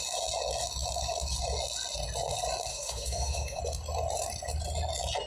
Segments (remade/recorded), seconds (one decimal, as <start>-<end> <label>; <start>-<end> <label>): 0.0-2.7 recorded; 2.7-3.6 remade; 3.6-5.3 recorded